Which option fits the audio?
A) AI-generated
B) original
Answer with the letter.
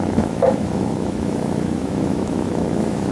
A